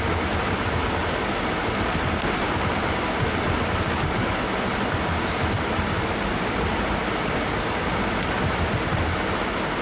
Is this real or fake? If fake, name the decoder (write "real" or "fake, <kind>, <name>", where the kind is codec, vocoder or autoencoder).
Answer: real